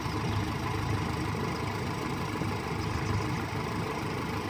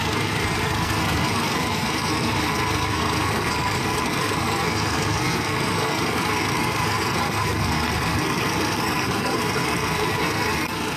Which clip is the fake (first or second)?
second